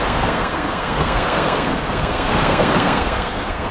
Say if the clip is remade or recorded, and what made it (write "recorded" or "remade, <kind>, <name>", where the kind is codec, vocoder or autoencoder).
remade, codec, SNAC